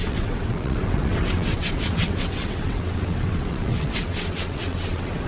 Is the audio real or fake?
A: fake